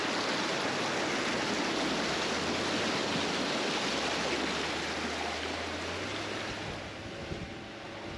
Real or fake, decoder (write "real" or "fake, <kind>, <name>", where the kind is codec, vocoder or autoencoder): real